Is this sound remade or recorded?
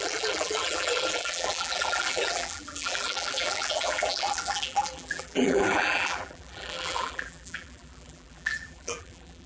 remade